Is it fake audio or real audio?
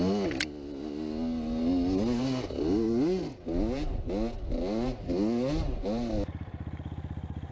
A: real